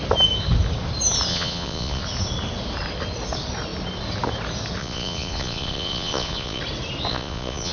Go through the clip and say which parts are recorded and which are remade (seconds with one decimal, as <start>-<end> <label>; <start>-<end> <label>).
0.0-1.3 recorded; 1.3-2.0 remade; 2.0-4.8 recorded; 4.8-6.6 remade; 6.6-7.1 recorded; 7.1-7.7 remade

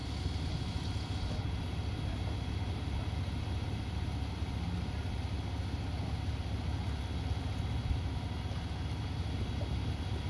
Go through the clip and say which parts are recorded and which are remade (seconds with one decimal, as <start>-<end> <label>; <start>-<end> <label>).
0.0-10.3 recorded

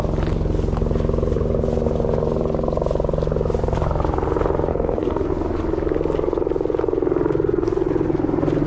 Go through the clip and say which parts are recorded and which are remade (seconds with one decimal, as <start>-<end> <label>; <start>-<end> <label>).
0.0-4.7 recorded; 4.7-5.3 remade; 5.3-8.7 recorded

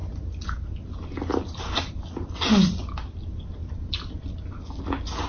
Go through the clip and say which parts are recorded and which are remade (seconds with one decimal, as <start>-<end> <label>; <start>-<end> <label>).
0.0-5.3 recorded

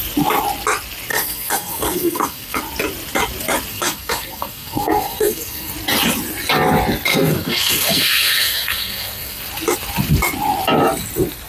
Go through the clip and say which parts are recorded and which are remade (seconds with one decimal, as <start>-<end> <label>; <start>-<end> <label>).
0.0-1.1 recorded; 1.1-2.6 remade; 2.6-3.7 recorded; 3.7-5.7 remade; 5.7-7.1 recorded; 7.1-9.4 remade; 9.4-11.5 recorded

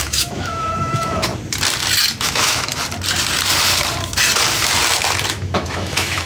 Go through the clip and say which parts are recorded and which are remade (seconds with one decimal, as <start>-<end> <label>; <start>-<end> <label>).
0.0-1.3 remade; 1.3-2.2 recorded; 2.2-2.7 remade; 2.7-5.3 recorded; 5.3-6.3 remade

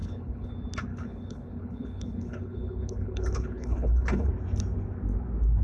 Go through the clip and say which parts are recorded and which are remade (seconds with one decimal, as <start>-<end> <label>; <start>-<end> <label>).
0.0-0.5 remade; 0.5-0.9 recorded; 0.9-4.3 remade; 4.3-5.6 recorded

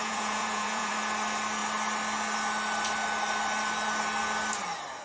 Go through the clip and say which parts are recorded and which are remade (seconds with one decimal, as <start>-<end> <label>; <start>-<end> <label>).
0.0-0.9 remade; 0.9-5.0 recorded